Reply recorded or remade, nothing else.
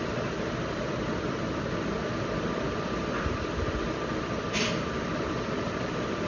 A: remade